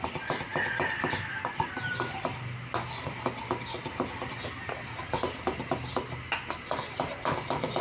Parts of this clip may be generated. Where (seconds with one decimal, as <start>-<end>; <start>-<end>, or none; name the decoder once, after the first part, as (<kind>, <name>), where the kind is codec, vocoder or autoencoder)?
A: none